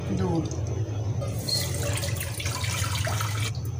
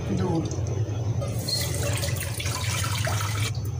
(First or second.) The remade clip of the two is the second